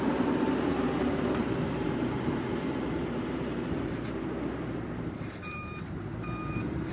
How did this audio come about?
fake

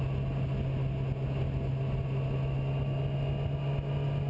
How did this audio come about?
real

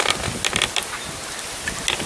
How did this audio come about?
real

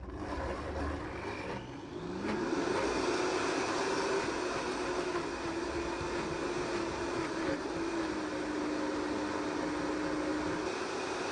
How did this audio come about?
real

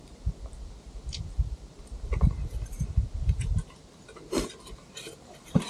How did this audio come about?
fake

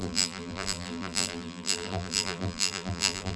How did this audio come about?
fake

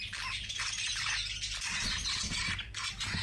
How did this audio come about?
real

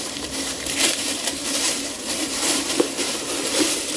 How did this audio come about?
fake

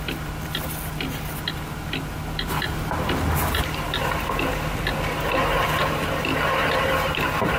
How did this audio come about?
real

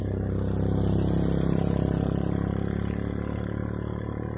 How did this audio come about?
real